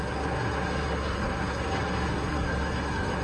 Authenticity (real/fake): fake